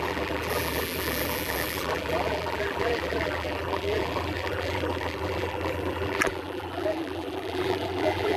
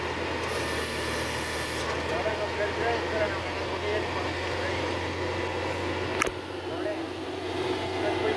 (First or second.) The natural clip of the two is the second